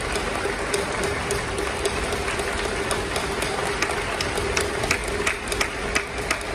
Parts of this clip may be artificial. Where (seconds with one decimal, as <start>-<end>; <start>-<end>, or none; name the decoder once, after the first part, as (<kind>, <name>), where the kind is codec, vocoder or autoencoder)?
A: none